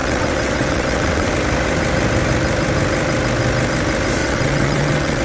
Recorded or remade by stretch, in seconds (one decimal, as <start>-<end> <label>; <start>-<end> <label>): 0.0-1.3 remade; 1.3-4.2 recorded; 4.2-5.2 remade